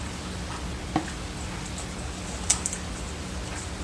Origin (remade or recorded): recorded